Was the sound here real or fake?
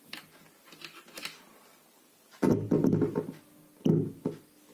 real